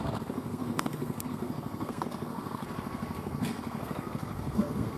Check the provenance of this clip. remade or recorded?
remade